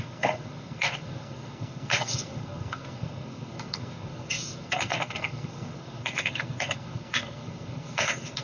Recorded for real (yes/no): no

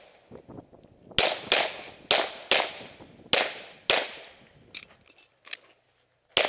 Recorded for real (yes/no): yes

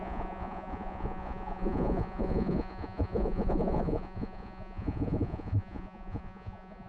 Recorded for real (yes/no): no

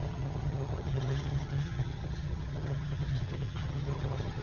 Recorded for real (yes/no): no